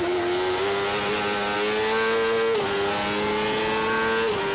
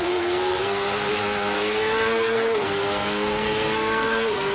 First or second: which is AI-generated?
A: second